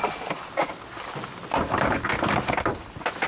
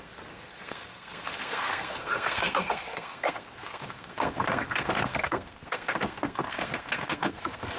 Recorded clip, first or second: first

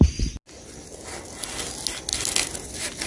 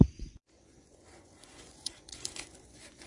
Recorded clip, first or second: first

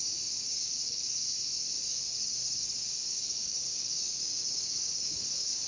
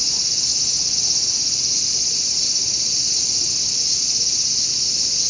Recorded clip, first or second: second